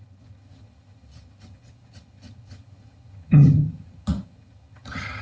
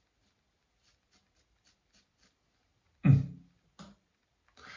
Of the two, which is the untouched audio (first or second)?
second